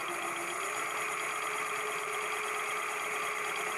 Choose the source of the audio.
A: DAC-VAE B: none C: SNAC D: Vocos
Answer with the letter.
B